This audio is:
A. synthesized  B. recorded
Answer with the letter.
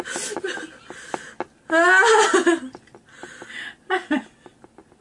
B